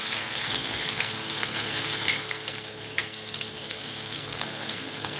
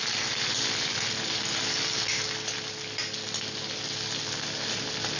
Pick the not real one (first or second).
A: first